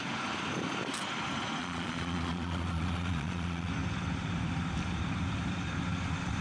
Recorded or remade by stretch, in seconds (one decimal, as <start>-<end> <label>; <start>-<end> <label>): 0.0-1.6 recorded; 1.6-3.7 remade; 3.7-6.4 recorded